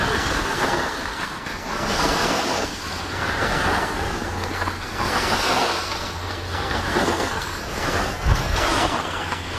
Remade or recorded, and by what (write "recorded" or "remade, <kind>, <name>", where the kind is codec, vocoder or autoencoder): remade, codec, SNAC